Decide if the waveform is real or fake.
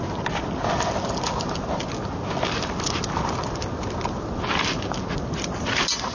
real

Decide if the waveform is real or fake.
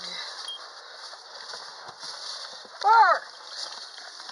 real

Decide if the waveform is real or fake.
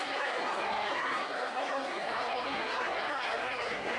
fake